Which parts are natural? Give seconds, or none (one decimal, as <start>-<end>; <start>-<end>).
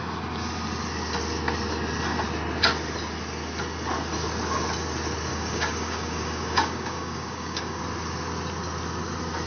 0.0-5.3; 7.8-9.5